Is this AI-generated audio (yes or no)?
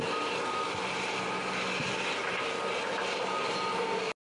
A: no